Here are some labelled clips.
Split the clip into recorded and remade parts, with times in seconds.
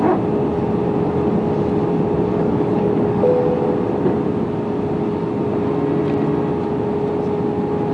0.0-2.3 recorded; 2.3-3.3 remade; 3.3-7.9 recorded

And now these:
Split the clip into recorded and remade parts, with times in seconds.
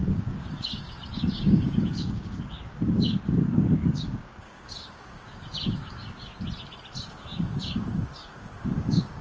0.0-6.3 remade; 6.3-7.1 recorded; 7.1-9.2 remade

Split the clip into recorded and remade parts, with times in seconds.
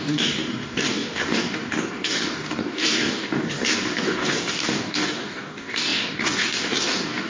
0.0-7.3 remade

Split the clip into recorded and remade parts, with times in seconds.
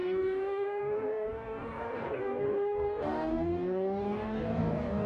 0.0-5.1 remade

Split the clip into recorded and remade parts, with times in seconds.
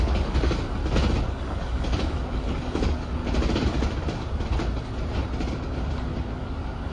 0.0-0.8 remade; 0.8-1.3 recorded; 1.3-3.2 remade; 3.2-6.2 recorded; 6.2-6.9 remade